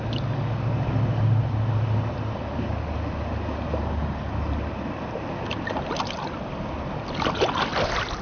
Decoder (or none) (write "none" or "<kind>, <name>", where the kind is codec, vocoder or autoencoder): none